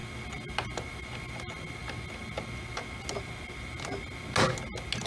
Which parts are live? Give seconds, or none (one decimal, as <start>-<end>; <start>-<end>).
0.0-5.1